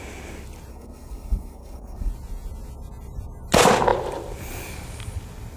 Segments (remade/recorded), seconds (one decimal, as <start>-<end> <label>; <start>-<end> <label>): 0.0-0.7 recorded; 0.7-2.1 remade; 2.1-5.6 recorded